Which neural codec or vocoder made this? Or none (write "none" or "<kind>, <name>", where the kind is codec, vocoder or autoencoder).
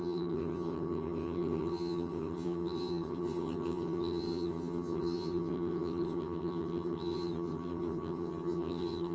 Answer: vocoder, HiFi-GAN